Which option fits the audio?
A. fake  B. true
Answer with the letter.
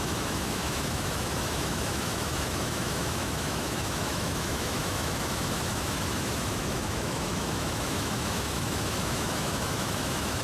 A